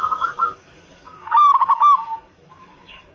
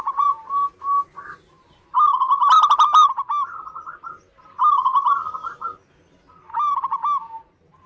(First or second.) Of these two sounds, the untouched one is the second